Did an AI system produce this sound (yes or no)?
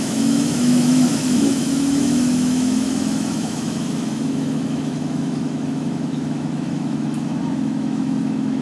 yes